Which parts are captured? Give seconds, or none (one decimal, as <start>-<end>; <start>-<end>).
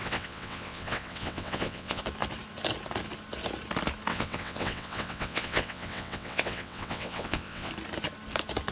2.0-4.1; 7.7-8.7